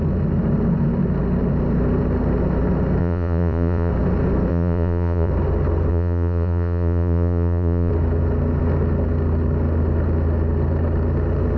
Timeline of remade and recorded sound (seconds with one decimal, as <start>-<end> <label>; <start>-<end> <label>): 0.0-3.0 recorded; 3.0-3.9 remade; 3.9-4.5 recorded; 4.5-5.3 remade; 5.3-5.9 recorded; 5.9-7.9 remade; 7.9-11.6 recorded